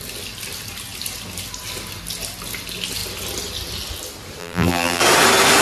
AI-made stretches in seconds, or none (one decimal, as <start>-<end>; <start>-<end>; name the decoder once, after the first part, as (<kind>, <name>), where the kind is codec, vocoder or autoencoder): 4.4-5.0 (vocoder, BigVGAN v2)